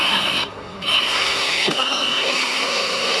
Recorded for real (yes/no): no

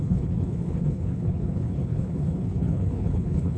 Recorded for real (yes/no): no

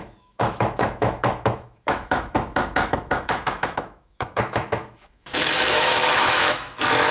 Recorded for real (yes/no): no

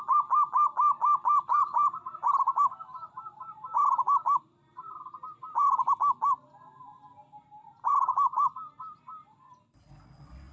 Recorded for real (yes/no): no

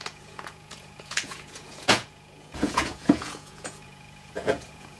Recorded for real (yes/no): no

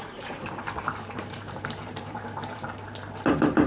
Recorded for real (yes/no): no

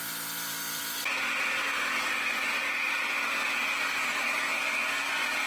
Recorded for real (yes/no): yes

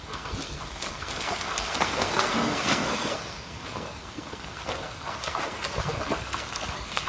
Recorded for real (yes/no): no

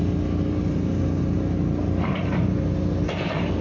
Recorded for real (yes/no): yes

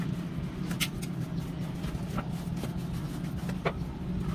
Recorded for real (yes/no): yes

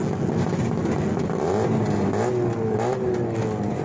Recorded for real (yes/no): yes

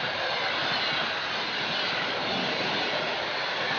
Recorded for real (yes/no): yes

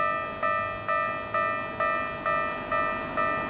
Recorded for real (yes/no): yes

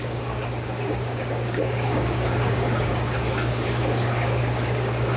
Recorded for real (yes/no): no